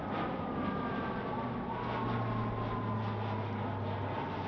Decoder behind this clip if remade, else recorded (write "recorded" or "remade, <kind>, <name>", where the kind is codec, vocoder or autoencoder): recorded